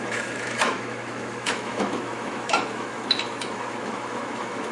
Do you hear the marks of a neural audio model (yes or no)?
yes